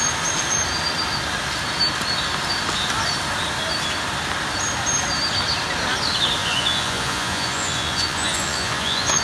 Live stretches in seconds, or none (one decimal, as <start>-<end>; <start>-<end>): 0.0-6.4